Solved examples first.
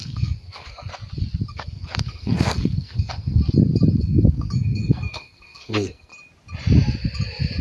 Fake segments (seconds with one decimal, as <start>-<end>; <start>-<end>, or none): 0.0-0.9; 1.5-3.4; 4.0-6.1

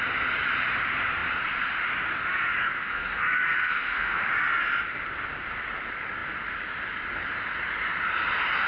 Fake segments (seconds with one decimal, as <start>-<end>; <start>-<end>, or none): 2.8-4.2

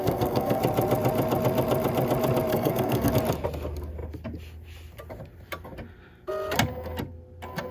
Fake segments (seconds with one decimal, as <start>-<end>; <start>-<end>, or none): 0.0-0.6; 2.5-3.1

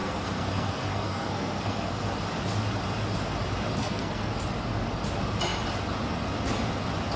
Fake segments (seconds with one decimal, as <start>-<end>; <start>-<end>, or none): 0.0-2.1; 3.8-4.3

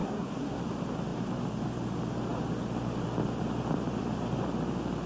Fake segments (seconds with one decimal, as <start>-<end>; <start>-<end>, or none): 0.0-0.6